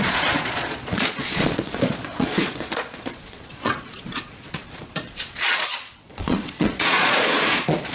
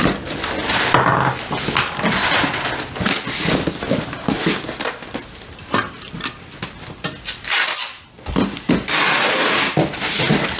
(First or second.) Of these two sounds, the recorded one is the second